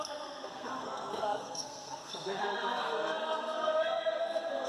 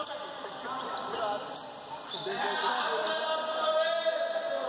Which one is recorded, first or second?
second